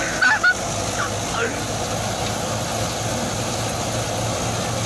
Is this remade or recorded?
recorded